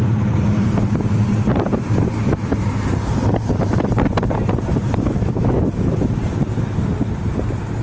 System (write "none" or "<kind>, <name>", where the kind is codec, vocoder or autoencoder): vocoder, BigVGAN v2